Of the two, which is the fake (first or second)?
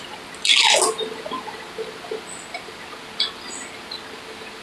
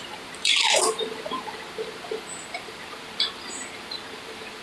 second